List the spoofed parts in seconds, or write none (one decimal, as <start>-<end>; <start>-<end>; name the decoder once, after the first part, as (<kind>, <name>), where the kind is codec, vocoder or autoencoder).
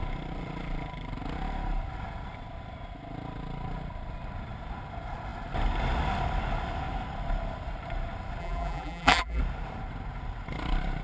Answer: 8.4-9.4 (vocoder, BigVGAN v2)